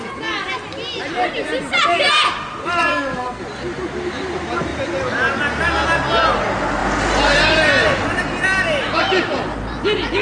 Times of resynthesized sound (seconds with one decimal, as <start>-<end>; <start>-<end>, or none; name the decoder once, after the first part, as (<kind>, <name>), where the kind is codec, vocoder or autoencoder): 2.9-3.4 (codec, SNAC)